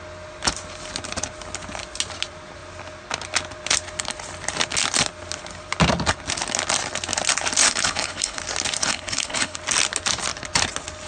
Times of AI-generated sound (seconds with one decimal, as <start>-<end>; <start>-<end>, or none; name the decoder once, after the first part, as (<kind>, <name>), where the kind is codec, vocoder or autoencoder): 7.6-8.4 (codec, HILCodec); 8.8-9.6